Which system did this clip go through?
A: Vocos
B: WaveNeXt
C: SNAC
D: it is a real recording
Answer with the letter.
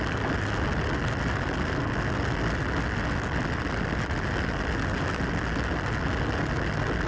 D